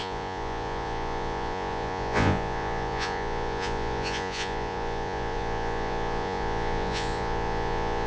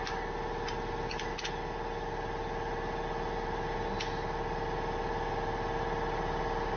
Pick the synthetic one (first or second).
first